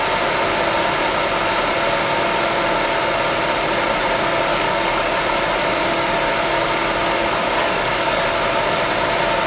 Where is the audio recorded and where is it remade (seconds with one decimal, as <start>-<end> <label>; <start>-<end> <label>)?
0.0-4.5 recorded; 4.5-5.2 remade; 5.2-7.2 recorded; 7.2-8.4 remade; 8.4-9.5 recorded

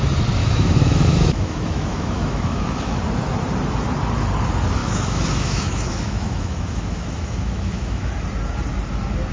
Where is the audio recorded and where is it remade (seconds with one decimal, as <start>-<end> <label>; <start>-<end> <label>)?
0.0-0.4 recorded; 0.4-3.0 remade; 3.0-4.8 recorded; 4.8-8.1 remade; 8.1-9.3 recorded

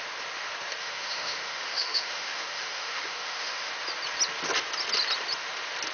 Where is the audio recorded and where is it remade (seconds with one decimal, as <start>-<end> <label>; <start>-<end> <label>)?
0.0-0.8 recorded; 0.8-3.7 remade; 3.7-5.9 recorded

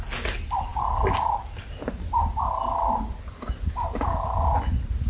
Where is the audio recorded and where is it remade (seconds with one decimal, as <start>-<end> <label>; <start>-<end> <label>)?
0.0-5.1 recorded

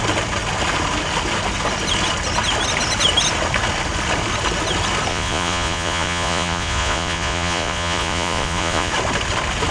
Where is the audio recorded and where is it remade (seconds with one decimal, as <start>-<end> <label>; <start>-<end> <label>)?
0.0-5.1 recorded; 5.1-8.9 remade; 8.9-9.7 recorded